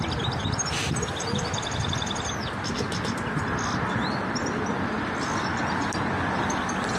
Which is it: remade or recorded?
recorded